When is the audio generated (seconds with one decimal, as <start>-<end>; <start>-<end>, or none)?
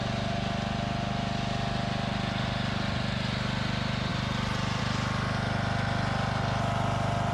none